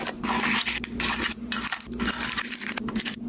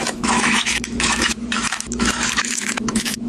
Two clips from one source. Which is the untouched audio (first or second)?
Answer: first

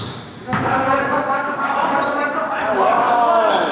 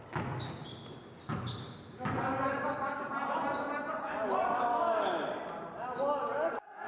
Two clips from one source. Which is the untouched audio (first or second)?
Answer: second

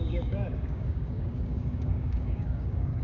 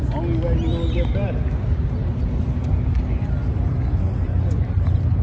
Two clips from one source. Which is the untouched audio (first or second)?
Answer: second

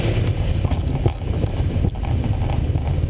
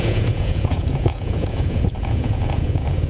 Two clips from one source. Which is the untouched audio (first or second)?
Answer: first